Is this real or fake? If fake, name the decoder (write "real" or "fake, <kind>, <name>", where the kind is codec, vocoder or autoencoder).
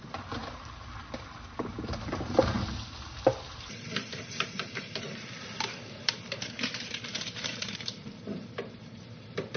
fake, vocoder, BigVGAN v2